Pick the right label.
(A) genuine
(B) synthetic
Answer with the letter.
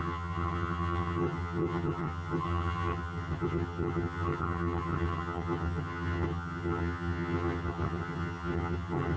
B